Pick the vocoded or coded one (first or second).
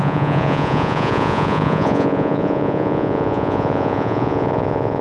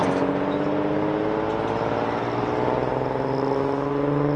first